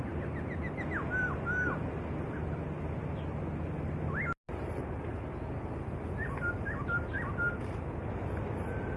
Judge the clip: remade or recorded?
recorded